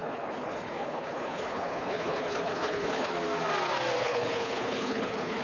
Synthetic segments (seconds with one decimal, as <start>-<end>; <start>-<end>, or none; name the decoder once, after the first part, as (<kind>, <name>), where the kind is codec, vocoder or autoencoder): 0.0-3.1 (codec, HILCodec); 4.0-5.4